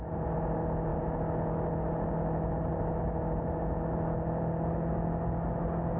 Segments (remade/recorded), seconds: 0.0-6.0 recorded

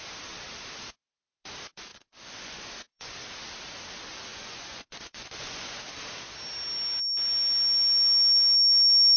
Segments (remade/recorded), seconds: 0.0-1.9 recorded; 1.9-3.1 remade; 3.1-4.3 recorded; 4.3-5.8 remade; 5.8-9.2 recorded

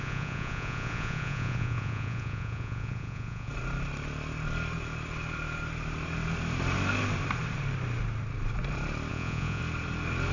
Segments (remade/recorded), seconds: 0.0-3.5 remade; 3.5-9.1 recorded; 9.1-9.6 remade; 9.6-10.3 recorded

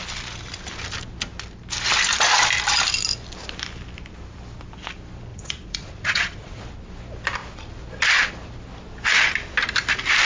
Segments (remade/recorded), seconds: 0.0-5.3 recorded; 5.3-6.7 remade; 6.7-10.2 recorded